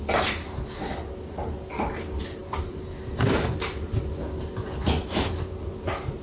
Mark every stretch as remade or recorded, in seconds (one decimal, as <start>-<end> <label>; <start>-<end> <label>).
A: 0.0-6.2 recorded